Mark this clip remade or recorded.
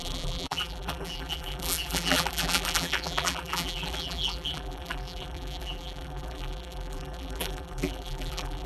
remade